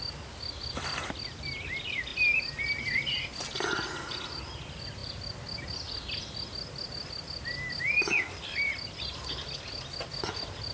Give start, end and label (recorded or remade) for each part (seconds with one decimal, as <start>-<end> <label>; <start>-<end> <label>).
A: 0.0-10.7 recorded